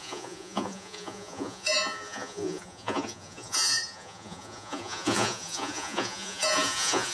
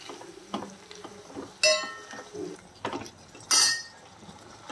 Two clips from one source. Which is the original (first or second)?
second